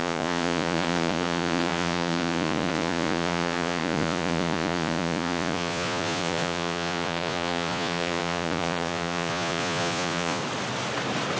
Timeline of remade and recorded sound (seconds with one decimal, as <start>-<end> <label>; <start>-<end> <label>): 0.0-10.4 remade; 10.4-11.4 recorded